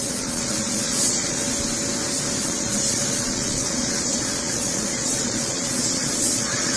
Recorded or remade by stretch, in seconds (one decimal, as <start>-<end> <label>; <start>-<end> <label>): 0.0-1.4 remade; 1.4-2.4 recorded; 2.4-6.8 remade